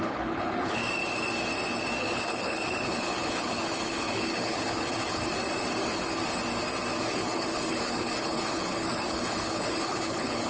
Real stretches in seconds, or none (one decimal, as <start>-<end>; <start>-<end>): 0.8-2.0; 5.2-7.1